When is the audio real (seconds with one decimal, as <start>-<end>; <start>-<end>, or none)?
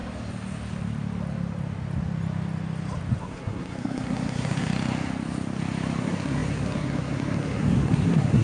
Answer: 0.0-3.2; 4.7-6.0